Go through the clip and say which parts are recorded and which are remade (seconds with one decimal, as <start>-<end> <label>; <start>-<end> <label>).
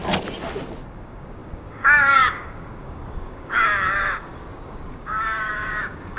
0.0-0.9 recorded; 0.9-6.2 remade